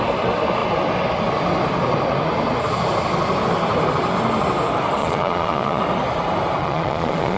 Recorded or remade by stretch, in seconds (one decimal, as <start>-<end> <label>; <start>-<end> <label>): 0.0-5.0 recorded; 5.0-5.8 remade; 5.8-6.6 recorded; 6.6-7.4 remade